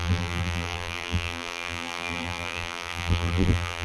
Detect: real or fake fake